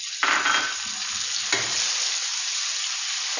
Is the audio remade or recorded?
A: recorded